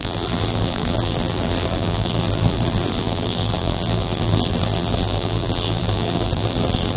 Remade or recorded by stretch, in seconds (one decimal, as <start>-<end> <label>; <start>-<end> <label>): 0.0-7.0 remade